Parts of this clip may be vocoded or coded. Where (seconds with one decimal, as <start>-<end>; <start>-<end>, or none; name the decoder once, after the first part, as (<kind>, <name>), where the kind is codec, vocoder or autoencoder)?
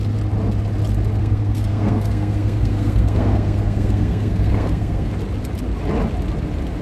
1.2-5.1 (codec, SNAC)